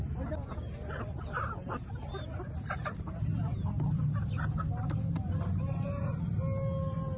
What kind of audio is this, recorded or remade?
recorded